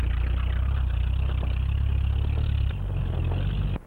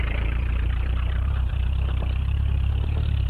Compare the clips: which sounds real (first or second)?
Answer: first